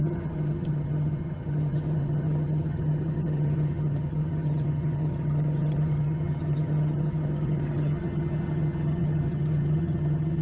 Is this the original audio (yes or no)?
no